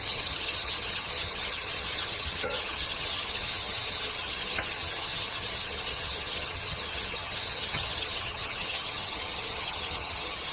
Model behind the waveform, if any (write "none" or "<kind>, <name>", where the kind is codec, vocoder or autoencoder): vocoder, HiFi-GAN